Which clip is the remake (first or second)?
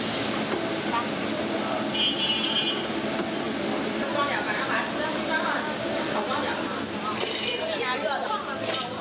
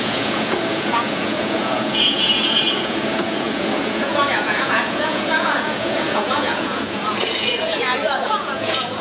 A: second